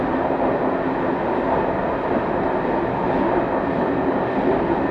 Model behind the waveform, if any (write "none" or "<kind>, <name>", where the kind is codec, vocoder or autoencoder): none